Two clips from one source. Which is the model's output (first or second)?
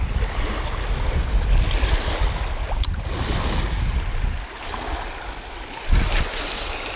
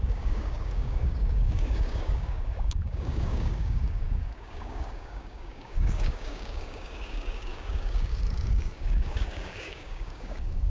second